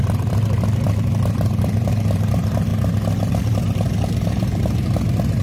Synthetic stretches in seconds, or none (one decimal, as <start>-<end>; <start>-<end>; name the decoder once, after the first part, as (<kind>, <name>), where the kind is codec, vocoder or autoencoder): 0.0-2.7 (vocoder, BigVGAN v2); 3.3-5.4